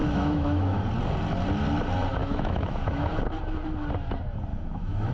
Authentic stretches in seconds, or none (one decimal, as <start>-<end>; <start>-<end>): 0.8-2.2; 3.1-4.5